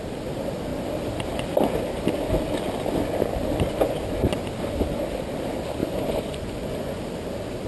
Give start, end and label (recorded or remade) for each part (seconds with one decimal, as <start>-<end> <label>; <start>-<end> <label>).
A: 0.0-5.8 recorded; 5.8-7.0 remade; 7.0-7.7 recorded